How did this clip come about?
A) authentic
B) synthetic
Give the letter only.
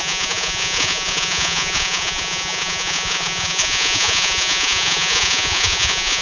B